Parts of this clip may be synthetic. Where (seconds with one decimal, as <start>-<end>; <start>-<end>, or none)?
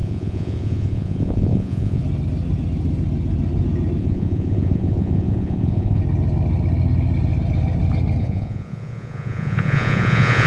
0.0-2.0; 4.0-6.0; 8.2-10.5